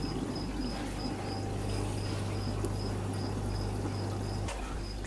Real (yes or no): yes